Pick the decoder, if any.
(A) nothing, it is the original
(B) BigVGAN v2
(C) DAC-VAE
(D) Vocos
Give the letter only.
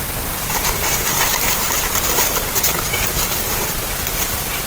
B